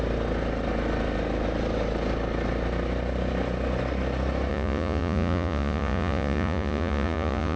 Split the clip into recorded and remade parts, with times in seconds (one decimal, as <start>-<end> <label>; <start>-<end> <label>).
0.0-4.5 recorded; 4.5-7.6 remade